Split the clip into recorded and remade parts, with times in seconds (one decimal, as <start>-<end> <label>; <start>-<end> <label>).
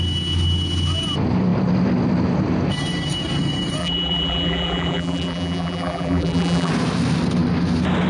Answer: 0.0-3.8 recorded; 3.8-6.7 remade; 6.7-8.1 recorded